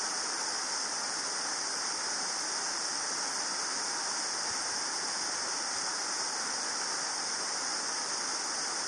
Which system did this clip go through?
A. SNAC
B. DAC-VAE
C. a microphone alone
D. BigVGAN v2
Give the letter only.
C